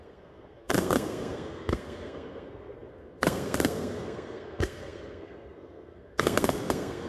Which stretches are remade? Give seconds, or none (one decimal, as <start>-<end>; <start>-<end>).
0.0-7.1

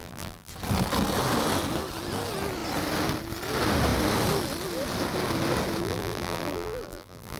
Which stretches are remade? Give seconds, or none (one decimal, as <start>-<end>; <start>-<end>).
0.0-0.5; 5.8-7.4

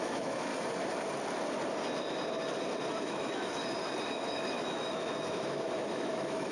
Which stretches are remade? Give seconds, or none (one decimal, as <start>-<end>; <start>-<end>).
0.0-0.5; 3.0-3.6; 4.1-6.5